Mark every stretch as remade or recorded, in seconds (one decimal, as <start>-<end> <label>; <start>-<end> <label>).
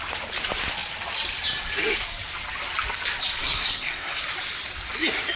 0.0-3.4 recorded; 3.4-4.2 remade; 4.2-5.4 recorded